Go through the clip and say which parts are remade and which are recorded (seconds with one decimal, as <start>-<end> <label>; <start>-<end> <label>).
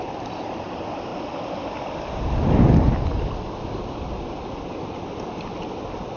0.0-6.2 recorded